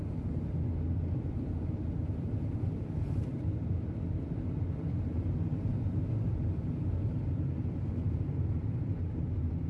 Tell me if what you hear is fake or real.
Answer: fake